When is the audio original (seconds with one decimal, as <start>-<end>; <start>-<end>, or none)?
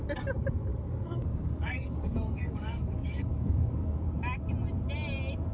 0.0-0.7; 4.0-5.5